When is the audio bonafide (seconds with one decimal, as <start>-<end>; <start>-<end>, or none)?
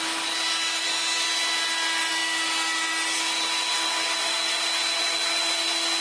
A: 0.0-6.0